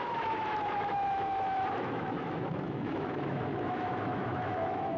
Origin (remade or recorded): remade